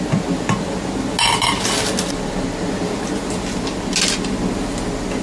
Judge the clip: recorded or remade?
recorded